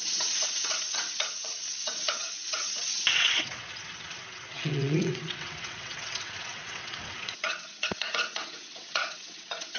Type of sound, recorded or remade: remade